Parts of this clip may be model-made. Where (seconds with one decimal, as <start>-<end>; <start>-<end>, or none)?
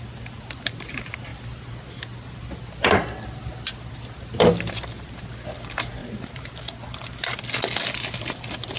6.0-7.4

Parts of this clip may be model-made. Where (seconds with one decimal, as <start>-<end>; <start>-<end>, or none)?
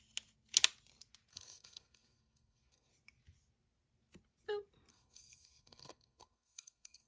1.3-2.9; 4.9-7.1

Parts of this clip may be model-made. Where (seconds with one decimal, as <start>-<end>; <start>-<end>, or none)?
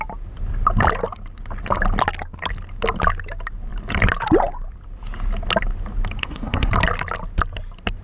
6.2-6.7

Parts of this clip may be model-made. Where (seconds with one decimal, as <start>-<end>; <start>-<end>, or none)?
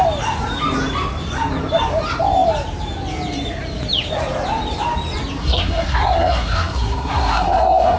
5.4-8.0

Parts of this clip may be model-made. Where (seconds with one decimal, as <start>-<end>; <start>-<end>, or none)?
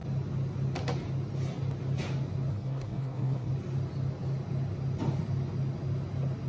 2.5-3.5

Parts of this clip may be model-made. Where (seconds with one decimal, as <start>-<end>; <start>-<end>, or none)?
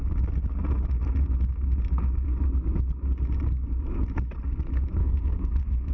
5.0-5.9